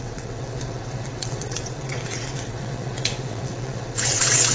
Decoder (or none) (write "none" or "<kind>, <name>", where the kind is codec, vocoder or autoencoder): vocoder, WaveNeXt